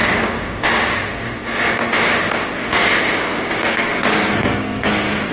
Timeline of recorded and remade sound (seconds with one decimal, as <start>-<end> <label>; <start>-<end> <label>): 0.0-3.7 recorded; 3.7-5.3 remade